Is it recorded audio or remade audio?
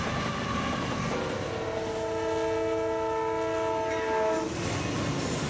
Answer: recorded